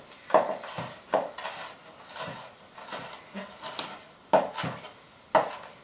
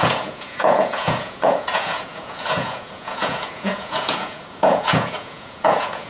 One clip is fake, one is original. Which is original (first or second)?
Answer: first